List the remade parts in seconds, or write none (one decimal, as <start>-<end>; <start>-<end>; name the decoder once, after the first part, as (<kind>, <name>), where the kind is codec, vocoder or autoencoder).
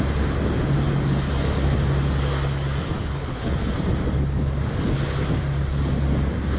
3.0-3.7 (codec, HILCodec)